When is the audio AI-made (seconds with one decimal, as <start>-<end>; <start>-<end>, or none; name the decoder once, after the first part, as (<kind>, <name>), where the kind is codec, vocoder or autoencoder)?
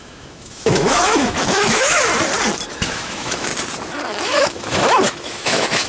0.0-2.1 (autoencoder, DAC-VAE); 2.7-3.5; 4.2-5.9